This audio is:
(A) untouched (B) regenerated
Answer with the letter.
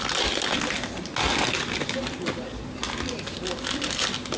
A